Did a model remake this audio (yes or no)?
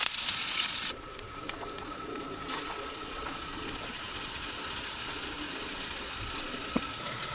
yes